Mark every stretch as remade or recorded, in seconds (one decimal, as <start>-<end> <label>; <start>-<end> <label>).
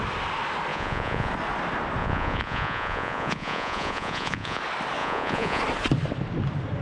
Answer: 0.0-0.7 recorded; 0.7-1.3 remade; 1.3-2.0 recorded; 2.0-4.6 remade; 4.6-5.0 recorded; 5.0-5.6 remade; 5.6-6.8 recorded